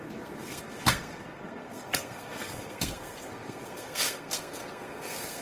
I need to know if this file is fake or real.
fake